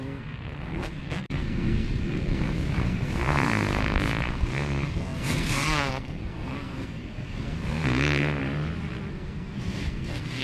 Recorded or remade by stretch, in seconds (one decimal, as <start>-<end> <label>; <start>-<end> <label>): 0.0-8.4 remade; 8.4-9.1 recorded; 9.1-10.4 remade